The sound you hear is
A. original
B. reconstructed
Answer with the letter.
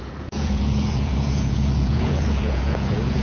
B